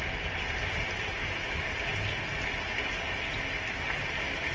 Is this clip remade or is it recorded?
recorded